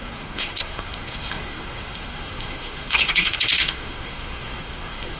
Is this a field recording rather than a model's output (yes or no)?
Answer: no